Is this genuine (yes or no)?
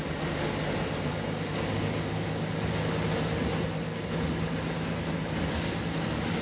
yes